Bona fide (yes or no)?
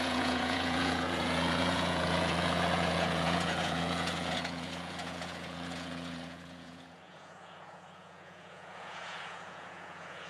no